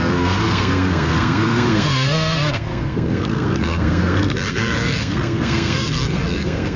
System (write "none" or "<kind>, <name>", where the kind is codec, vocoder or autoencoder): codec, SNAC